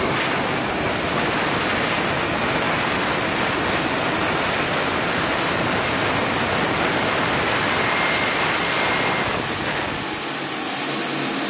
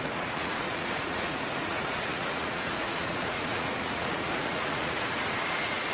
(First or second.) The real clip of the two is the first